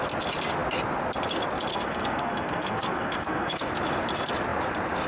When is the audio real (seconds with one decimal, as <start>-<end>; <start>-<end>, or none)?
0.0-1.7; 3.7-5.1